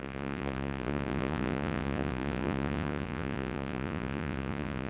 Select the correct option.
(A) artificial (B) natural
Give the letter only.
A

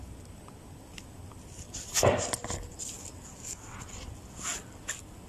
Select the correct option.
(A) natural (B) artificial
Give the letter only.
A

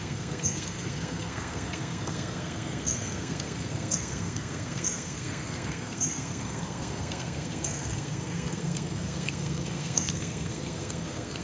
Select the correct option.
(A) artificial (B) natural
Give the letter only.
A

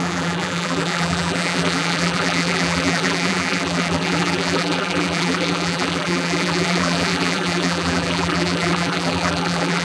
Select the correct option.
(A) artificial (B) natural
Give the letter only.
A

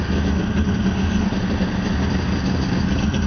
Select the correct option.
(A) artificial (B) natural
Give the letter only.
B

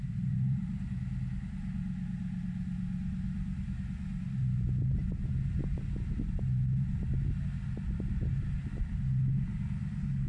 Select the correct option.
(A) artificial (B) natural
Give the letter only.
B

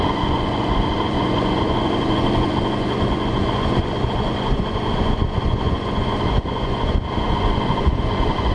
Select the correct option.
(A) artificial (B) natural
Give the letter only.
A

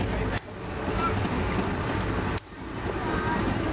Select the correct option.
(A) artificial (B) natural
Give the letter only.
B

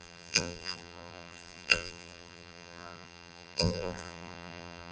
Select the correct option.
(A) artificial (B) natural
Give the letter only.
A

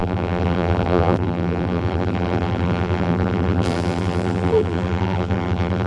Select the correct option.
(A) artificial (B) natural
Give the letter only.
A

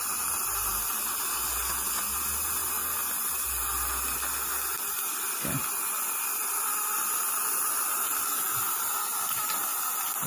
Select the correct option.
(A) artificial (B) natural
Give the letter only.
B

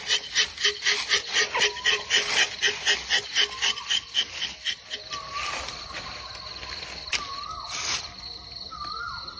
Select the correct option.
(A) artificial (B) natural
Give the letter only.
B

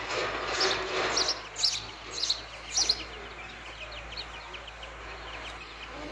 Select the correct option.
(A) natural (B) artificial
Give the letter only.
A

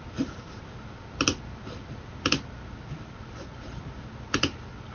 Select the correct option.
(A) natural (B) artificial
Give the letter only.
B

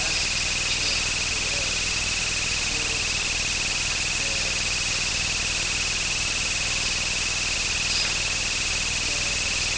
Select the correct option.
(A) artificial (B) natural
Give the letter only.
B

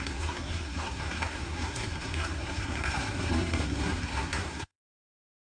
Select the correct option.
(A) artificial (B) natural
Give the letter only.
A